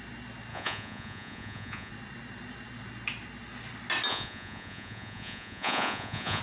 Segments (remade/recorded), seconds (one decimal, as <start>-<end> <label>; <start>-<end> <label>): 0.0-0.5 recorded; 0.5-1.9 remade; 1.9-4.1 recorded; 4.1-6.4 remade